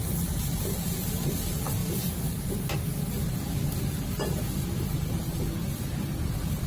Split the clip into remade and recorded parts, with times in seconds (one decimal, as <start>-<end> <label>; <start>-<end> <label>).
0.0-1.8 remade; 1.8-4.1 recorded; 4.1-5.3 remade; 5.3-5.9 recorded; 5.9-6.7 remade

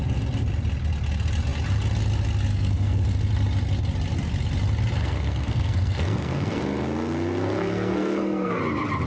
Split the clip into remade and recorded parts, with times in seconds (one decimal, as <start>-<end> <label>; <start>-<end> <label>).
0.0-2.5 recorded; 2.5-3.0 remade; 3.0-5.0 recorded; 5.0-8.6 remade; 8.6-9.1 recorded

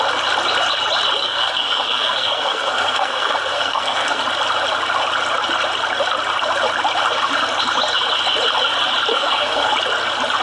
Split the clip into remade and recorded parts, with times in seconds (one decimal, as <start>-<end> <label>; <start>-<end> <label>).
0.0-1.2 recorded; 1.2-4.2 remade; 4.2-9.1 recorded; 9.1-9.7 remade; 9.7-10.4 recorded

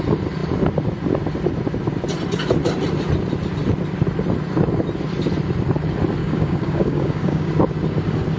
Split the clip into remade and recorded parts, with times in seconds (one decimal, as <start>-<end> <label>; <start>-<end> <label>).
0.0-6.2 recorded; 6.2-7.5 remade; 7.5-8.4 recorded